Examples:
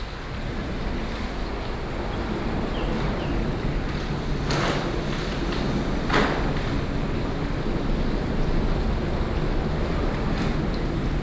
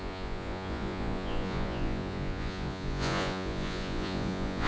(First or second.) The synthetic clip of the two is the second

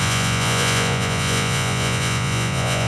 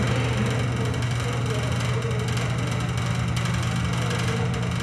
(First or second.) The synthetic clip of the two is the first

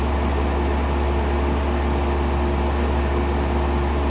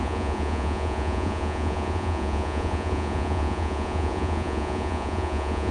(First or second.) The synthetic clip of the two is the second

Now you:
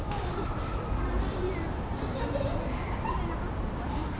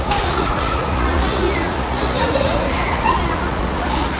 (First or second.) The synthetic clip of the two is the second